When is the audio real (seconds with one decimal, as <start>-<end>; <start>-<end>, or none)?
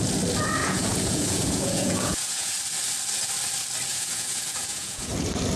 0.0-0.6; 2.5-3.9; 5.1-5.6